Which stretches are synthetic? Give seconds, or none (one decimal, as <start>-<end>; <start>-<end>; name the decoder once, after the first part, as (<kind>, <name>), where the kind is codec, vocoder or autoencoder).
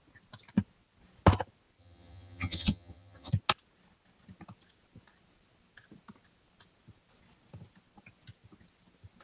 1.8-3.3 (vocoder, HiFi-GAN)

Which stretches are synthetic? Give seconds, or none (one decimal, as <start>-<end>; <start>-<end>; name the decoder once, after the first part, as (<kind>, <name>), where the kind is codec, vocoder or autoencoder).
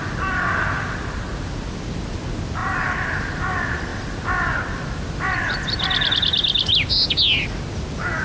none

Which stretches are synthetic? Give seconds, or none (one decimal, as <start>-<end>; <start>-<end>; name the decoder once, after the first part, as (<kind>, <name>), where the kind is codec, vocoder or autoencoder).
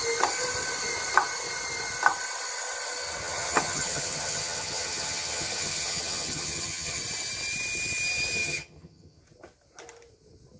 3.2-7.0 (vocoder, HiFi-GAN); 8.4-9.2